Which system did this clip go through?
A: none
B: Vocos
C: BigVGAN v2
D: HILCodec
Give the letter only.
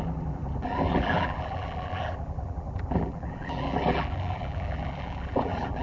C